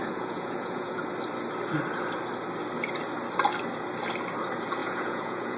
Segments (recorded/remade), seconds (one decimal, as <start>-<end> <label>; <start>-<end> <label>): 0.0-1.0 remade; 1.0-4.8 recorded; 4.8-5.6 remade